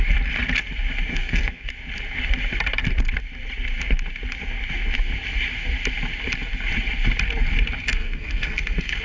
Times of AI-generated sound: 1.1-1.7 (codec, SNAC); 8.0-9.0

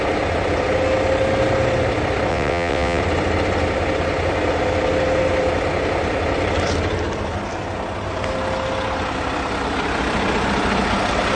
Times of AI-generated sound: 2.3-3.0 (vocoder, WaveNeXt)

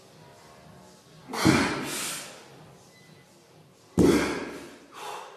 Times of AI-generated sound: none

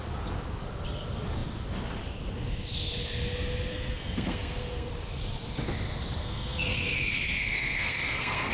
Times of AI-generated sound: 3.7-4.9 (codec, SNAC); 6.2-8.5

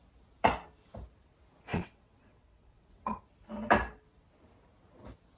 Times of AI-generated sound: 1.7-3.2 (vocoder, WaveNeXt)

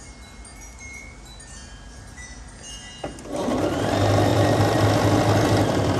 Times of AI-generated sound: 4.3-4.9 (vocoder, BigVGAN v2)

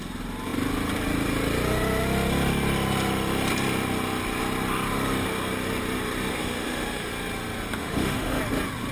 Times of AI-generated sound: 6.3-7.1 (autoencoder, DAC-VAE); 7.8-8.4